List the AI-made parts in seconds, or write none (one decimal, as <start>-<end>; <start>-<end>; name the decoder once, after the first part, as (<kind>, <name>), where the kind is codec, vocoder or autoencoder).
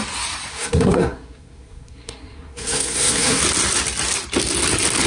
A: 0.5-3.4 (codec, SNAC)